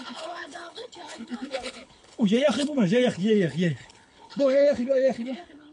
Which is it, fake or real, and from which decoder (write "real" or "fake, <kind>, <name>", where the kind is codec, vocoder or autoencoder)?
fake, codec, HILCodec